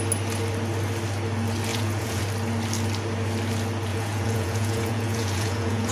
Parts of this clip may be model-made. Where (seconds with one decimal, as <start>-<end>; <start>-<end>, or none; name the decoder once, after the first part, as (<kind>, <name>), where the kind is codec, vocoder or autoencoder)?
1.7-2.2 (vocoder, Vocos); 3.9-5.9